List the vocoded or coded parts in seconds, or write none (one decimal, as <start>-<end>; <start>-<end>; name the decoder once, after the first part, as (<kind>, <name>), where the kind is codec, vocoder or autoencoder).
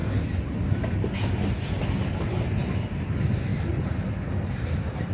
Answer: none